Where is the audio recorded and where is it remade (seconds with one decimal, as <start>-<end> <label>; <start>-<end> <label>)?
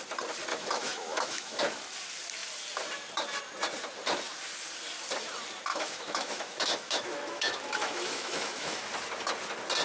0.0-0.5 recorded; 0.5-1.6 remade; 1.6-5.7 recorded; 5.7-8.9 remade; 8.9-9.8 recorded